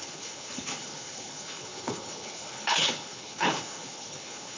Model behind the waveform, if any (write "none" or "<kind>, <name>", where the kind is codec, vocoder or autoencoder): codec, HILCodec